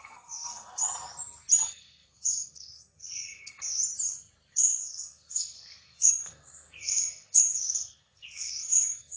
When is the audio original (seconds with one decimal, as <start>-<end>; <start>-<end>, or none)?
0.8-1.7; 3.8-4.5